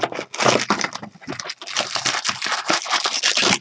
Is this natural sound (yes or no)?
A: yes